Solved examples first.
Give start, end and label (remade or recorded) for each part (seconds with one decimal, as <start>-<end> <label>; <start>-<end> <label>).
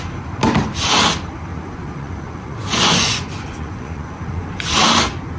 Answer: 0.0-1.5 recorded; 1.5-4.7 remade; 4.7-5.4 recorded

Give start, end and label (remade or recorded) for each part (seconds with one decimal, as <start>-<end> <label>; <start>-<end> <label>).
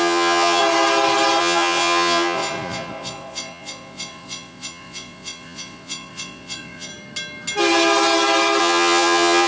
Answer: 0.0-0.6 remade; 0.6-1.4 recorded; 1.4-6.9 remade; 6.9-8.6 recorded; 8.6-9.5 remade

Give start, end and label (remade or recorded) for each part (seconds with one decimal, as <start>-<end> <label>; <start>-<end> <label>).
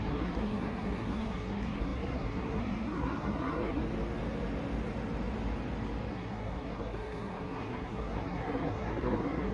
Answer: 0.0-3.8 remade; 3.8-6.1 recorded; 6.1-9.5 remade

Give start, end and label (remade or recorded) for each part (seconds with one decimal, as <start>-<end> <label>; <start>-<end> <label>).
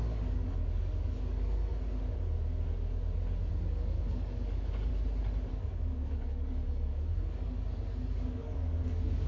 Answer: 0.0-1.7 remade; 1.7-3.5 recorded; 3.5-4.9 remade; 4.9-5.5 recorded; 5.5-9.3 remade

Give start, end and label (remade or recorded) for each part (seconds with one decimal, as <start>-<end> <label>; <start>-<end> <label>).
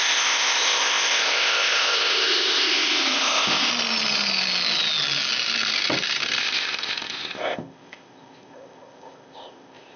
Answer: 0.0-3.7 remade; 3.7-6.4 recorded; 6.4-10.0 remade